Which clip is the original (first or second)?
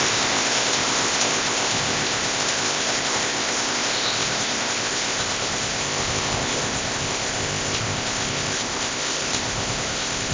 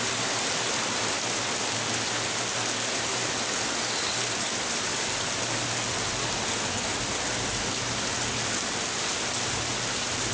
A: second